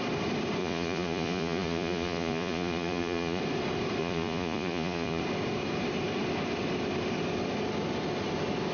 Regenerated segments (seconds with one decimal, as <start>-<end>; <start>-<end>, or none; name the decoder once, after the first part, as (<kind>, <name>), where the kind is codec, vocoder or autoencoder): 0.6-3.4 (vocoder, Vocos); 4.0-5.2